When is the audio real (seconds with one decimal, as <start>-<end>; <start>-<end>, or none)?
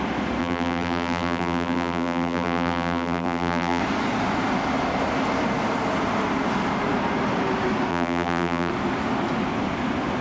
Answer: 0.0-0.4; 3.8-7.9; 8.7-10.2